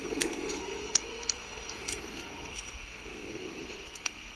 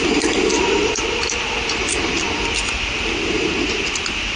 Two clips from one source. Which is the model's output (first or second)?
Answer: first